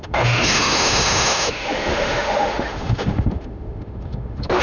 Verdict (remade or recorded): remade